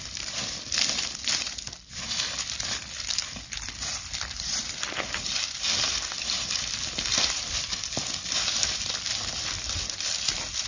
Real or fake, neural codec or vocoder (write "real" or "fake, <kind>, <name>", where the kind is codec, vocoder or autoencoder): fake, vocoder, BigVGAN v2